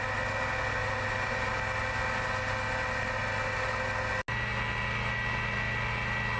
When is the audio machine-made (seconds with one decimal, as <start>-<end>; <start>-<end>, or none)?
none